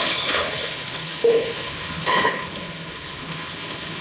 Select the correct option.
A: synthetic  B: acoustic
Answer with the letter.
A